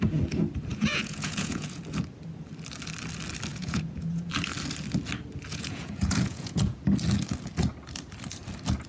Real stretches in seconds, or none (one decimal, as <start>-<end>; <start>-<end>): 0.0-0.7; 1.8-3.5; 4.3-5.5; 6.8-8.9